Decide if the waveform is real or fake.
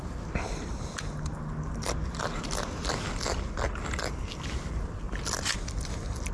real